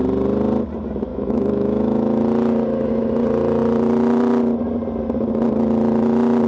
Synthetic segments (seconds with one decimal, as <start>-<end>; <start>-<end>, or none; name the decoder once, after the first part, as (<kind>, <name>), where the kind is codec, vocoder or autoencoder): 1.1-2.2 (autoencoder, DAC-VAE)